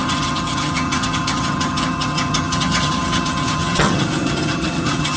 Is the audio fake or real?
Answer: fake